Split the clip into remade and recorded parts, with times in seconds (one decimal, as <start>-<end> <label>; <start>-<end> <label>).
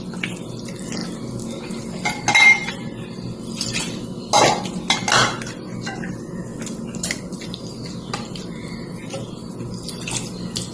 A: 0.0-10.7 recorded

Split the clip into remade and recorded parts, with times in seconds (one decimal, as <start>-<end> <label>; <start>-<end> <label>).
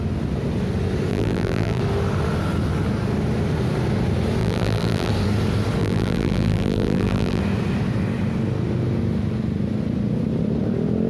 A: 0.0-1.1 recorded; 1.1-1.8 remade; 1.8-4.4 recorded; 4.4-5.1 remade; 5.1-5.8 recorded; 5.8-7.4 remade; 7.4-11.1 recorded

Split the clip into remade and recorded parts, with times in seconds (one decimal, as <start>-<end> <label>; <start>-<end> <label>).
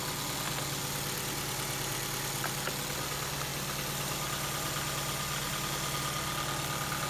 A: 0.0-7.1 recorded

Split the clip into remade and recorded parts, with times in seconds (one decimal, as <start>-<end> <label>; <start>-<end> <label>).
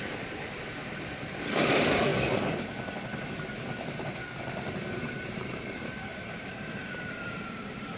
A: 0.0-0.8 remade; 0.8-1.7 recorded; 1.7-2.1 remade; 2.1-4.9 recorded; 4.9-8.0 remade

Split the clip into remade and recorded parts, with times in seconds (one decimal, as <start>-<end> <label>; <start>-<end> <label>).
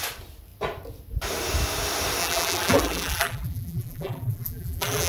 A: 0.0-2.2 recorded; 2.2-5.1 remade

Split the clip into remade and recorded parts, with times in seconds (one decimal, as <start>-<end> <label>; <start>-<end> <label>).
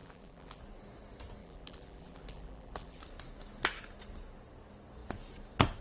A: 0.0-0.6 remade; 0.6-1.4 recorded; 1.4-3.0 remade; 3.0-5.8 recorded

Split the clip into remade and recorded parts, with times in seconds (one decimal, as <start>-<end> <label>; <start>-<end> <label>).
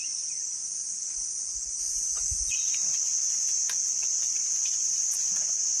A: 0.0-0.8 recorded; 0.8-2.9 remade; 2.9-5.8 recorded